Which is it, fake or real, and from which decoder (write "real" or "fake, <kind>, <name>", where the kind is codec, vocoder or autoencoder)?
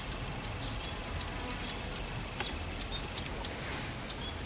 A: real